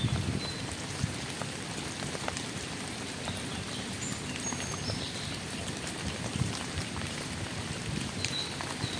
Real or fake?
real